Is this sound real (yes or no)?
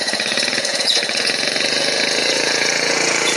no